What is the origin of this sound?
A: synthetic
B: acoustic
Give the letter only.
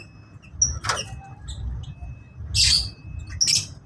B